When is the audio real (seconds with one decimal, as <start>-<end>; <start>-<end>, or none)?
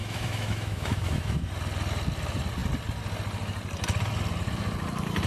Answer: 1.5-5.3